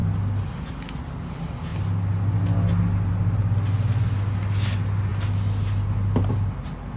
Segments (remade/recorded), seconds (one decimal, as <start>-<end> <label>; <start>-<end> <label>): 0.0-7.0 recorded